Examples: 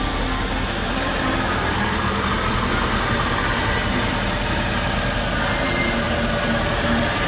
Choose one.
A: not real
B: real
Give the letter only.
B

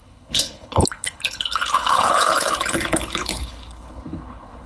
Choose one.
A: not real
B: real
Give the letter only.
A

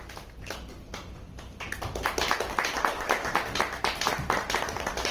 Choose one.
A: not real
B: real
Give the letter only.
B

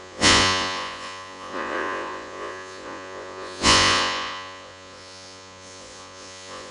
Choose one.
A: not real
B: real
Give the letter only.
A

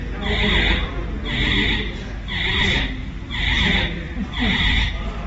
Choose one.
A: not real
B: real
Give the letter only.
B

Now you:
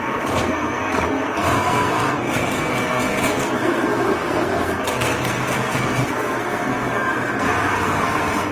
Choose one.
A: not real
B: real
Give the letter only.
A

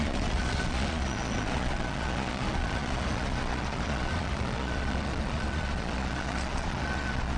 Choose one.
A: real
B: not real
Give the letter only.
B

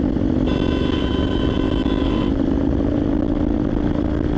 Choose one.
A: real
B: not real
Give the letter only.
A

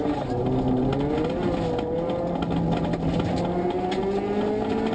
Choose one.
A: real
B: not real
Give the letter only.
A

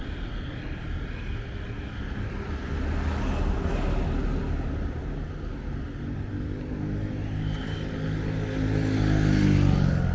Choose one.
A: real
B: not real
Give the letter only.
A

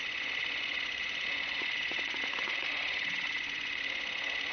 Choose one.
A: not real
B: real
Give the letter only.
A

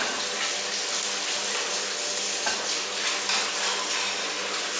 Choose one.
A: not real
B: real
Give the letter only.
B